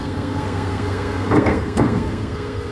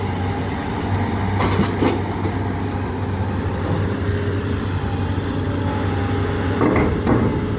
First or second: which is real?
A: second